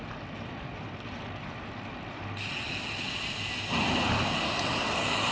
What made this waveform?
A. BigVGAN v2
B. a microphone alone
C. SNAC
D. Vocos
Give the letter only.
B